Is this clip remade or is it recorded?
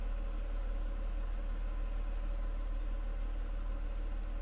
recorded